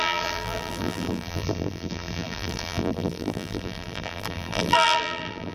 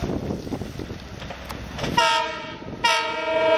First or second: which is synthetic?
first